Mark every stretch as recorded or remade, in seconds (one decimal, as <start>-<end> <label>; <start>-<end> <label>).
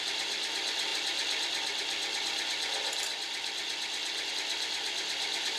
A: 0.0-5.6 recorded